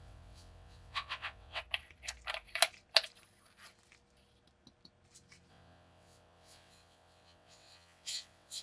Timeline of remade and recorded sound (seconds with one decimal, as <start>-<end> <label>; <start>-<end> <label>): 0.0-1.6 remade; 1.6-5.5 recorded; 5.5-8.6 remade